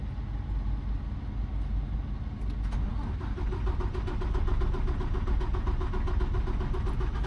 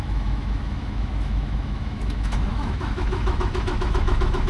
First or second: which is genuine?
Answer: first